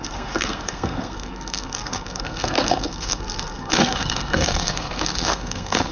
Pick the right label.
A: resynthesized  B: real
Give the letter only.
A